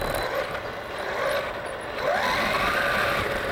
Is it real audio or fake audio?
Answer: real